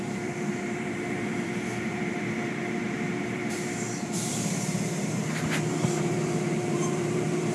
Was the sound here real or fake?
fake